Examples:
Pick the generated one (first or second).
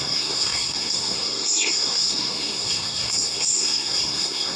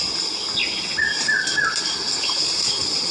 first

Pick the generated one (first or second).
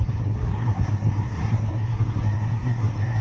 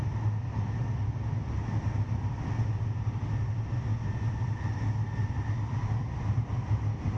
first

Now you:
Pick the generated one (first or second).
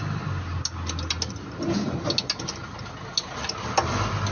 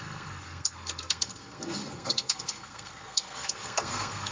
second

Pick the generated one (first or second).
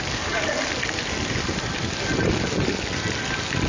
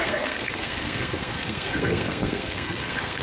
second